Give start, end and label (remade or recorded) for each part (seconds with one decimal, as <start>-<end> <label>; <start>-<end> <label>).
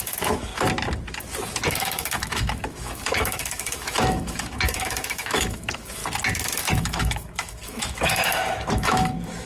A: 0.0-0.5 remade; 0.5-1.7 recorded; 1.7-6.0 remade; 6.0-6.6 recorded; 6.6-9.5 remade